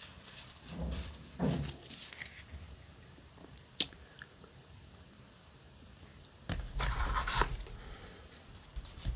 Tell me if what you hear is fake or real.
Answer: fake